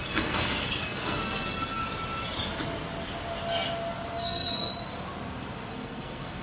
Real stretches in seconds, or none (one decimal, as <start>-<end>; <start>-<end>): 1.8-4.2; 4.7-5.7